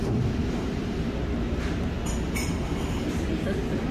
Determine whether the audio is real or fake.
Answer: real